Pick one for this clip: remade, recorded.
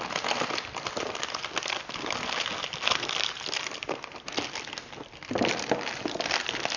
recorded